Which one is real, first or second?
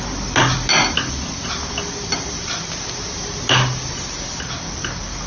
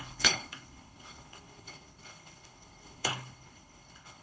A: first